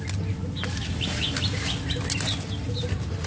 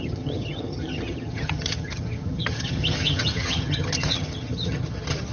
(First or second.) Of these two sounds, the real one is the first